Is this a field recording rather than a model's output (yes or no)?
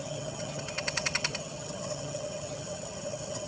no